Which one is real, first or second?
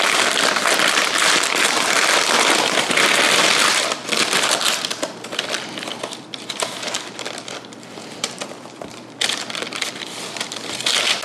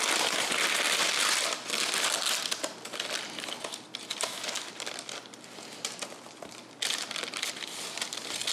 second